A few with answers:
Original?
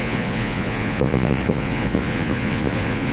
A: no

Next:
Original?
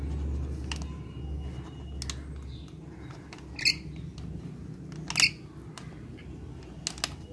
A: yes